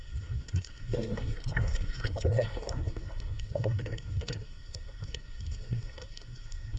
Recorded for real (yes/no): no